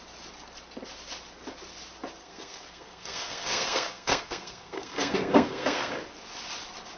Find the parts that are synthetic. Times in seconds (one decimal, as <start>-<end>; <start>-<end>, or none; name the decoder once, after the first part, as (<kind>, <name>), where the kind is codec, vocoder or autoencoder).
2.2-5.9 (codec, SNAC)